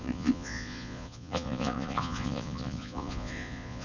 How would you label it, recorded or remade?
remade